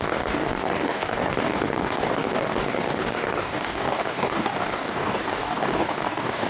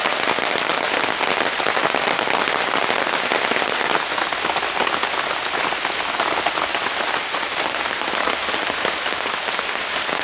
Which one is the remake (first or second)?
first